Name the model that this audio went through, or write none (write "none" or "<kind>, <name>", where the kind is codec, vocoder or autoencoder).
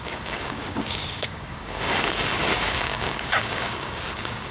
codec, DAC